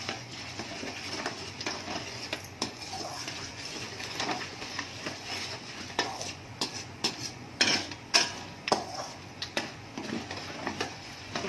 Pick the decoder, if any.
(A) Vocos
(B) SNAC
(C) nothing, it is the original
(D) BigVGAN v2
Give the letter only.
A